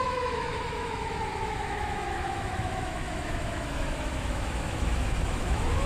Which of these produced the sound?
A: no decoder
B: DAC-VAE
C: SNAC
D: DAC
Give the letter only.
B